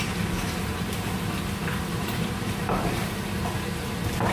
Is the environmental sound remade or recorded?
recorded